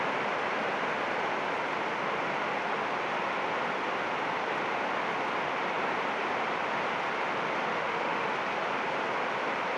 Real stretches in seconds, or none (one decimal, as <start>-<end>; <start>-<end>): 0.0-7.7; 8.3-9.8